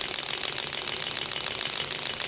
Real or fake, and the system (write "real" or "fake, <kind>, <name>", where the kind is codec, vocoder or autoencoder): real